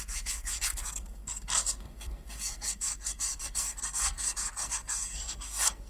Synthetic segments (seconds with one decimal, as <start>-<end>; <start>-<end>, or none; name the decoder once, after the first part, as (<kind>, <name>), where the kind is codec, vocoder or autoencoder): 0.0-5.9 (codec, SNAC)